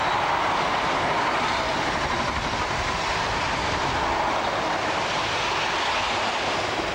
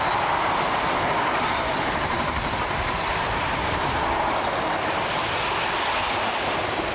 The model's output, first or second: second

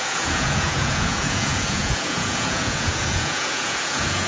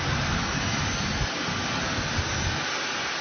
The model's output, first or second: first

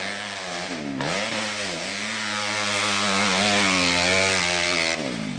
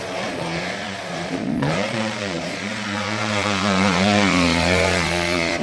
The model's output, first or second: second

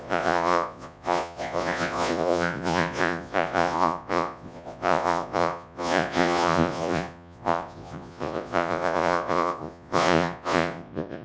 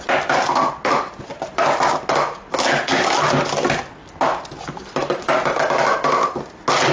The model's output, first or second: first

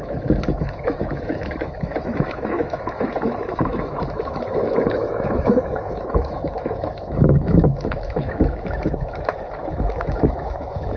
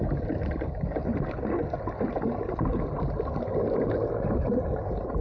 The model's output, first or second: first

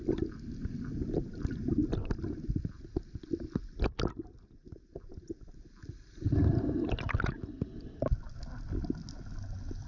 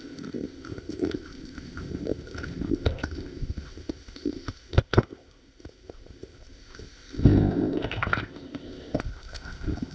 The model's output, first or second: second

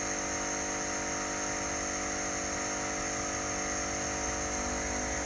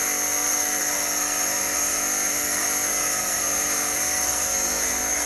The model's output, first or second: second